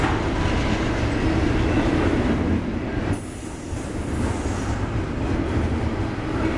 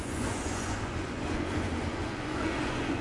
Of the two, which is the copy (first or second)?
second